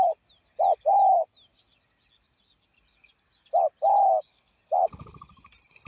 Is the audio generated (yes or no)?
no